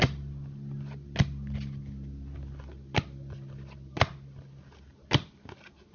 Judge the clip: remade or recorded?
recorded